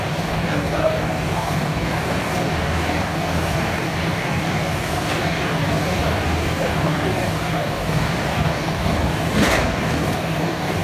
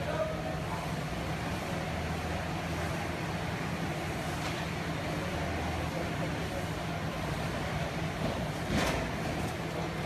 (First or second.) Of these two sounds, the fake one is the first